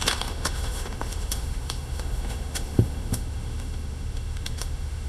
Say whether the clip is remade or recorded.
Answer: remade